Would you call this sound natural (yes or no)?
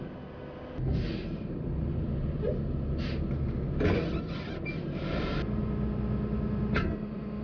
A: yes